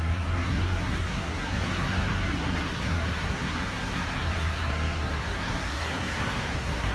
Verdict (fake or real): fake